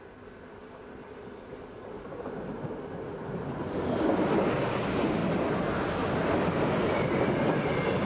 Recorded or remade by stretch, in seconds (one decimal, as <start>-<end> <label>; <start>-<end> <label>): 0.0-8.1 recorded